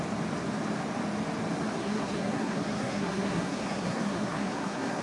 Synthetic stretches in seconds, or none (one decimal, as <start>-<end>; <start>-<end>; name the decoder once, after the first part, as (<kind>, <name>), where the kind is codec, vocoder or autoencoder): 1.8-5.0 (codec, SNAC)